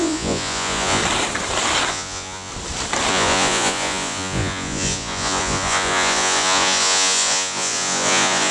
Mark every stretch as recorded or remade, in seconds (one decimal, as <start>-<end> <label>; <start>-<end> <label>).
0.0-1.0 remade; 1.0-1.9 recorded; 1.9-2.5 remade; 2.5-3.1 recorded; 3.1-8.5 remade